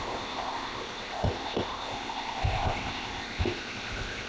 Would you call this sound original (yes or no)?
no